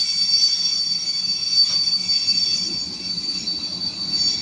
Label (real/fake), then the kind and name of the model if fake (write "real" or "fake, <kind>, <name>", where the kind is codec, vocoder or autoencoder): real